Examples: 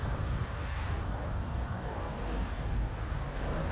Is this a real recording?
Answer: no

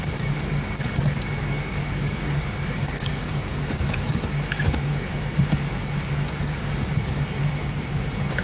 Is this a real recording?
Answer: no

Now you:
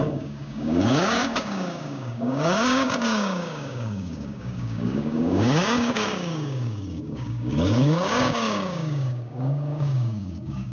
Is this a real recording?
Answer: no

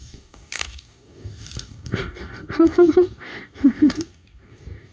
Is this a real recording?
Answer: no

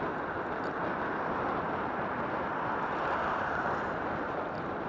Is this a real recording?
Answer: yes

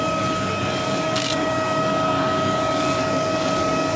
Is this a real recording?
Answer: no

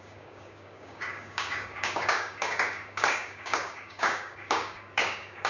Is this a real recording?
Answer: no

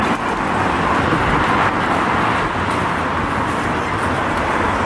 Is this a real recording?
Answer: yes